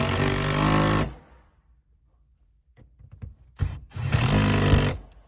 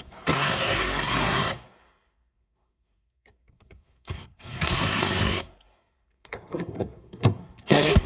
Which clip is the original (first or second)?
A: first